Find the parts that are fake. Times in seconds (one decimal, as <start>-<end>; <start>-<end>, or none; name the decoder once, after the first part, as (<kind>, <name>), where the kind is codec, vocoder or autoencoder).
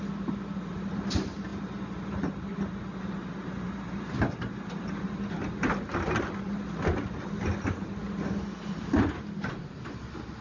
none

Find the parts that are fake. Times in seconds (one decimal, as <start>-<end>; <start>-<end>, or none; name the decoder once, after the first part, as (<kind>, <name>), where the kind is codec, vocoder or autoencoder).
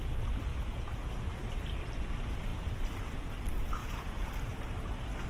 0.5-1.1 (vocoder, Vocos); 3.8-4.3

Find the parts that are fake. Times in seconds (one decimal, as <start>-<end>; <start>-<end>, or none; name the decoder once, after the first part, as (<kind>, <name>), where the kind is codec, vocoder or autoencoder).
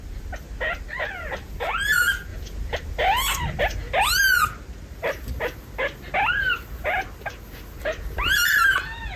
none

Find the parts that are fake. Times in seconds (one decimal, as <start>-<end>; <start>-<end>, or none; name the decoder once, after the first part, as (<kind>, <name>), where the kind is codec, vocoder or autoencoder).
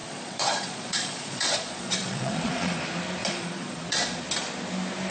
0.0-2.8 (vocoder, Vocos); 3.2-4.2